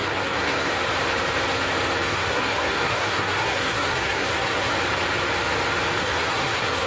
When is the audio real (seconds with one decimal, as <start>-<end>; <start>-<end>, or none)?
0.7-2.1; 4.7-6.0